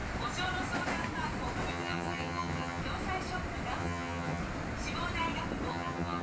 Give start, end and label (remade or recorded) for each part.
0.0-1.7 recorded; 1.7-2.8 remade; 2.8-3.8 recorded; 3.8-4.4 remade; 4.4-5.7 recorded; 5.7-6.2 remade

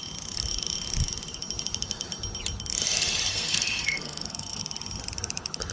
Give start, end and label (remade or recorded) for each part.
0.0-3.3 recorded; 3.3-4.6 remade; 4.6-5.7 recorded

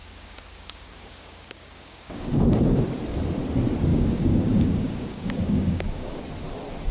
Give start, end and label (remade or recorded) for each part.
0.0-2.6 remade; 2.6-3.9 recorded; 3.9-6.2 remade; 6.2-6.9 recorded

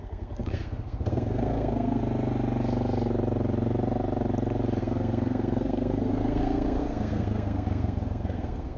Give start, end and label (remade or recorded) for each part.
0.0-2.0 remade; 2.0-4.8 recorded; 4.8-8.8 remade

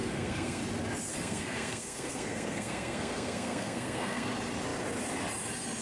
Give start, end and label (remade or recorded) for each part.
0.0-0.6 remade; 0.6-1.1 recorded; 1.1-4.3 remade; 4.3-5.8 recorded